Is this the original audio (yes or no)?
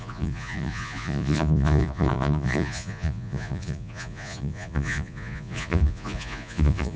no